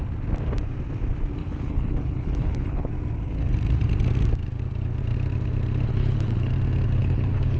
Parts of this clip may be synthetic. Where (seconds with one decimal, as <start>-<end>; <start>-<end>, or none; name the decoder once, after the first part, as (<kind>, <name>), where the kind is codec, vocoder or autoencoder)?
1.4-2.9 (codec, HILCodec); 5.9-6.5; 7.0-7.6